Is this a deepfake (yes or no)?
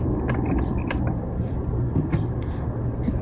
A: yes